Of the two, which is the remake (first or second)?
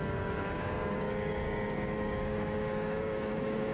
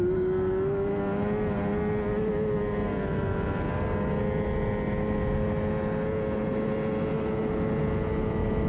first